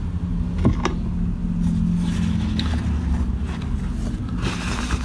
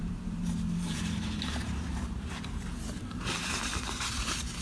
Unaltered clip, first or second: first